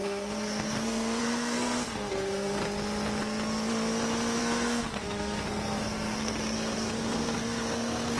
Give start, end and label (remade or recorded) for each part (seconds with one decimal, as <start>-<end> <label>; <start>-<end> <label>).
0.0-2.6 remade; 2.6-4.4 recorded; 4.4-8.2 remade